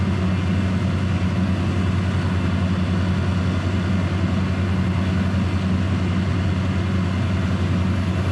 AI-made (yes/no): no